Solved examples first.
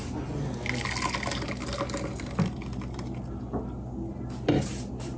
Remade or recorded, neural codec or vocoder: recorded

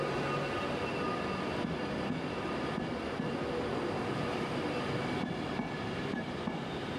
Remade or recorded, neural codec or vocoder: recorded